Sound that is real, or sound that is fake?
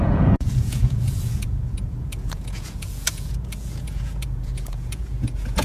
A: fake